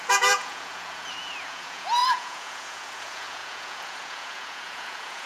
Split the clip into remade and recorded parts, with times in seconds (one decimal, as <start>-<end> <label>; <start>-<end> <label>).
0.0-5.3 remade